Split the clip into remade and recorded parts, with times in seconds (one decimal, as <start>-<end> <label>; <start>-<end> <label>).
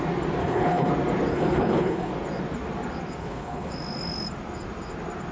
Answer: 0.0-0.4 recorded; 0.4-0.9 remade; 0.9-1.3 recorded; 1.3-2.1 remade; 2.1-3.2 recorded; 3.2-3.7 remade; 3.7-5.3 recorded